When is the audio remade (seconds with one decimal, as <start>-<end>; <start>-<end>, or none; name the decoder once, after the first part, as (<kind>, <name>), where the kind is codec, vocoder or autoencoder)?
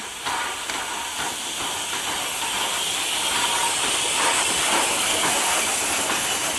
1.1-1.8 (vocoder, BigVGAN v2); 3.6-4.6